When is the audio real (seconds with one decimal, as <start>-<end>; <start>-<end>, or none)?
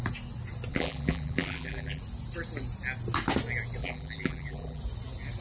0.0-0.7; 2.0-3.8; 4.8-5.4